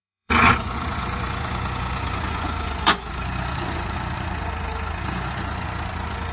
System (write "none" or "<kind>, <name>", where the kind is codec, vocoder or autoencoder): vocoder, Vocos